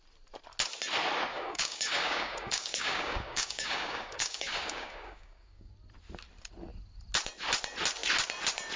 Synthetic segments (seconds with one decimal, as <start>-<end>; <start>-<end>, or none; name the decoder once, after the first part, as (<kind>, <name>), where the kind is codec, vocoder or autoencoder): 1.3-5.7 (codec, DAC)